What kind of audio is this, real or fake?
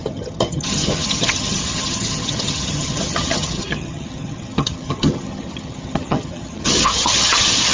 fake